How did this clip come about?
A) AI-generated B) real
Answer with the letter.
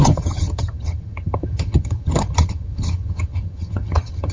A